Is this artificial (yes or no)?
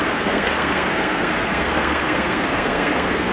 yes